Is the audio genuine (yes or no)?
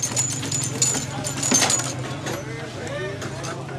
yes